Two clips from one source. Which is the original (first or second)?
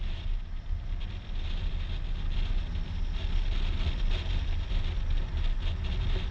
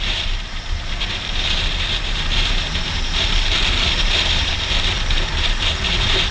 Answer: first